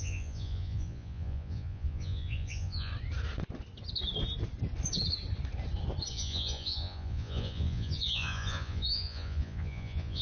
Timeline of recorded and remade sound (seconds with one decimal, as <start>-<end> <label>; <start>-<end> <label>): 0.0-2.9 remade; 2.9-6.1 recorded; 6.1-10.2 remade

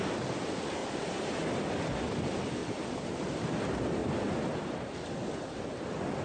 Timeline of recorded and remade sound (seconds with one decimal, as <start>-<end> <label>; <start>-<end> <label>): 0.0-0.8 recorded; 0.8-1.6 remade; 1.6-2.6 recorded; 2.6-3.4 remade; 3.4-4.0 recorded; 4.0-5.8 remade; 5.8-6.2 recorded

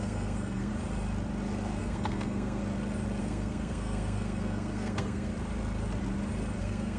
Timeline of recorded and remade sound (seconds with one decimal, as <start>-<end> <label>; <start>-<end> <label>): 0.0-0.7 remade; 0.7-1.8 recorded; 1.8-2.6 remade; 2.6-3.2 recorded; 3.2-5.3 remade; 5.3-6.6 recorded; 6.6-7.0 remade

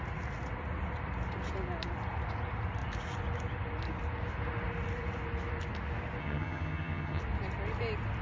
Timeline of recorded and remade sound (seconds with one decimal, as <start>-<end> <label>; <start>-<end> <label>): 0.0-6.2 recorded; 6.2-7.2 remade; 7.2-8.2 recorded

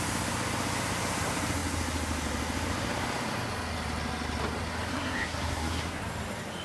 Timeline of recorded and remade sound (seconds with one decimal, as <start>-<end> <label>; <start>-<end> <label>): 0.0-4.9 recorded; 4.9-6.0 remade; 6.0-6.6 recorded

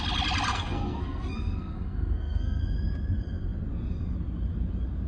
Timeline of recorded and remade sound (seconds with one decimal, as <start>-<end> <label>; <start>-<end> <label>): 0.0-0.5 recorded; 0.5-2.6 remade; 2.6-5.1 recorded

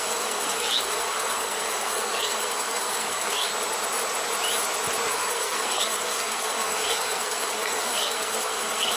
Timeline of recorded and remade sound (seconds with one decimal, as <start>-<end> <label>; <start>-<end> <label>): 0.0-3.5 remade; 3.5-5.1 recorded; 5.1-9.0 remade